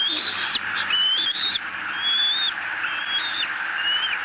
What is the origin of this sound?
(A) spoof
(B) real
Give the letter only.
B